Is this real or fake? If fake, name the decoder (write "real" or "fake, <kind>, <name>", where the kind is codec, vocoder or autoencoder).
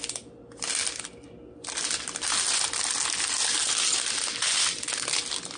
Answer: real